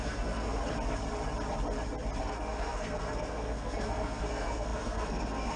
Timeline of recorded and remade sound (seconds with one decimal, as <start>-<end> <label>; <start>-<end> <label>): 0.0-0.6 remade; 0.6-2.2 recorded; 2.2-5.6 remade